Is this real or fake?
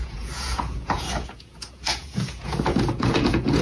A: fake